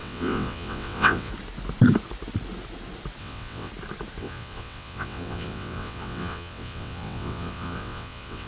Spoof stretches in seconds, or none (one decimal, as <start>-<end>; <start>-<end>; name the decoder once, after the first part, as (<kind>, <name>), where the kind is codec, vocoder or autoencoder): 0.0-1.3 (vocoder, WaveNeXt); 3.2-3.7; 4.2-8.5